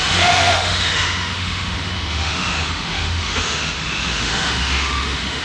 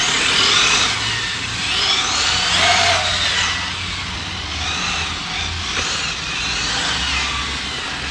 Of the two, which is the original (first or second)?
second